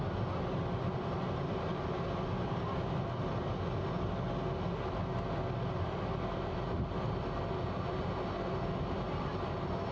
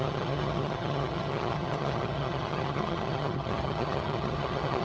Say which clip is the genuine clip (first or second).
first